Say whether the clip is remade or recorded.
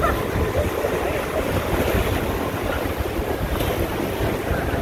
recorded